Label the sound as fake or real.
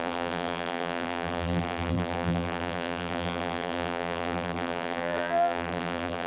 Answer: fake